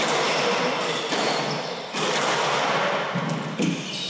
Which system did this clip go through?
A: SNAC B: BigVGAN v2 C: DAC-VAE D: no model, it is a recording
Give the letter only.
D